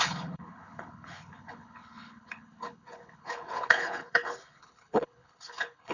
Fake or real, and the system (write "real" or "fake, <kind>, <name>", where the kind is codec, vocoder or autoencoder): fake, codec, HILCodec